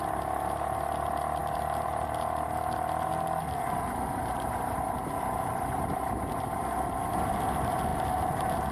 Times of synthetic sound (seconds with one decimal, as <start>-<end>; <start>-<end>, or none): none